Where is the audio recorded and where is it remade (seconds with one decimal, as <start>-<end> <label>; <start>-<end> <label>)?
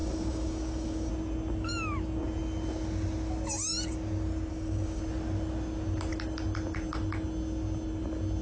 0.0-1.1 remade; 1.1-4.5 recorded; 4.5-5.0 remade; 5.0-8.4 recorded